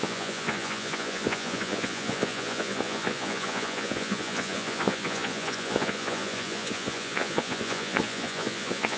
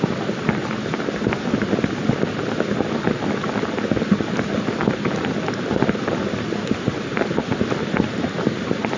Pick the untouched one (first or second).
second